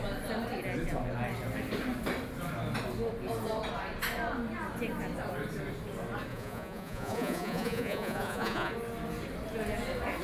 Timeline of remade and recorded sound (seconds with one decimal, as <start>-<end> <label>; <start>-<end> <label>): 0.0-6.3 recorded; 6.3-8.7 remade; 8.7-10.2 recorded